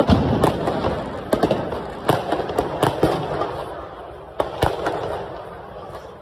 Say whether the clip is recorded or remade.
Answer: recorded